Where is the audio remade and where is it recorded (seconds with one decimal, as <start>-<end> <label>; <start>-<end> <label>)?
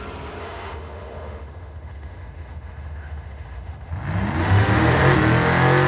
0.0-0.4 recorded; 0.4-3.9 remade; 3.9-4.4 recorded; 4.4-5.0 remade; 5.0-5.9 recorded